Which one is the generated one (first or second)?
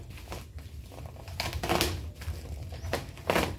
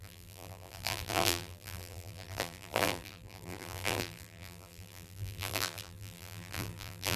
second